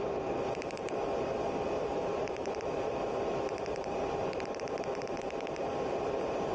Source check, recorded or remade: remade